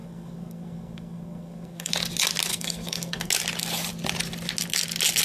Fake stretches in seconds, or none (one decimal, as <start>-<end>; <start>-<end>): 0.0-1.9; 2.5-3.3